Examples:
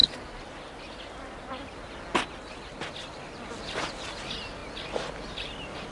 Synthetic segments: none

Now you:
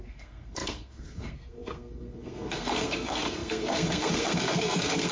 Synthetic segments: 0.0-5.1 (codec, SNAC)

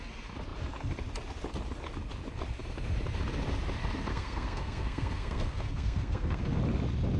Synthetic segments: 4.1-6.6 (codec, SNAC)

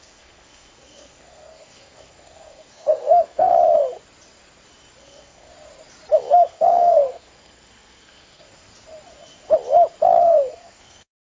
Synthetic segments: 0.0-3.5 (codec, SNAC); 5.0-5.5; 6.3-8.7; 10.2-11.3